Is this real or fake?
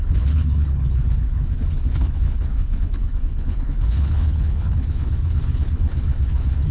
fake